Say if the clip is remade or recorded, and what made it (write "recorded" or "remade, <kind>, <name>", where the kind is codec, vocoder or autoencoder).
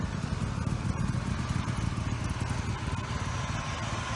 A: recorded